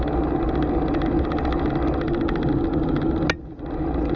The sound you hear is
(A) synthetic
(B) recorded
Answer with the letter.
B